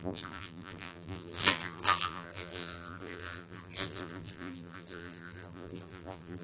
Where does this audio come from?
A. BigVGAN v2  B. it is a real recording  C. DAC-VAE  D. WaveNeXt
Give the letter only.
A